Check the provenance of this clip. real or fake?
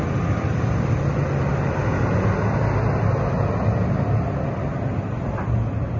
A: real